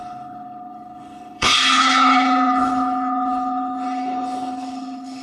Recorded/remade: remade